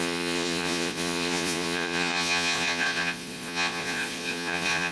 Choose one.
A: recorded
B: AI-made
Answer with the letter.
B